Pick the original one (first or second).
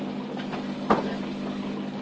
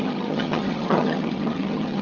first